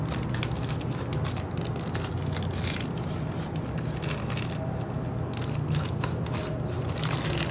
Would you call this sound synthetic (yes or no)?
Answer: no